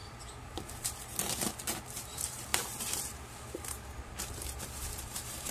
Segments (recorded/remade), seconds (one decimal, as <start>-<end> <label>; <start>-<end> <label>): 0.0-0.8 recorded; 0.8-5.5 remade